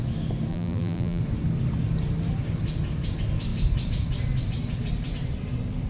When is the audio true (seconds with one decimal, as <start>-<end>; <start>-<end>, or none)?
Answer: 0.0-0.5; 1.2-5.9